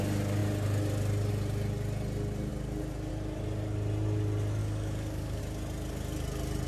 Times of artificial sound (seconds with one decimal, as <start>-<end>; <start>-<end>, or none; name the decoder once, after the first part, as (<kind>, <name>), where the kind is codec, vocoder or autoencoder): 4.6-5.4 (codec, DAC)